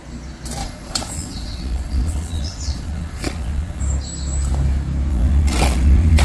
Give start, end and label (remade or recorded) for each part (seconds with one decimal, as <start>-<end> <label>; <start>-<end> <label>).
0.0-0.6 recorded; 0.6-3.8 remade; 3.8-5.1 recorded; 5.1-6.2 remade